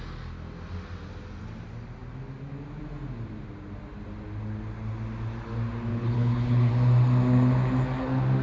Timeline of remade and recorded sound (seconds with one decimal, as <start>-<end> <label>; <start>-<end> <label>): 0.0-5.9 recorded; 5.9-6.7 remade; 6.7-8.4 recorded